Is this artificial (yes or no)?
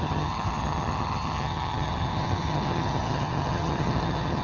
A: yes